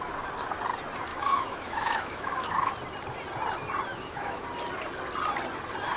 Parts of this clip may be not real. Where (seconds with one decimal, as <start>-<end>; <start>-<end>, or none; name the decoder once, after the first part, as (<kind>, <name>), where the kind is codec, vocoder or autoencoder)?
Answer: 1.1-2.7 (autoencoder, DAC-VAE); 3.9-4.4